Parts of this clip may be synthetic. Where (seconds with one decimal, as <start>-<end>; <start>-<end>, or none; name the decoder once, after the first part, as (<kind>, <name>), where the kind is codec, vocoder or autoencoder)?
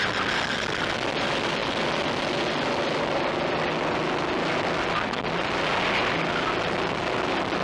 none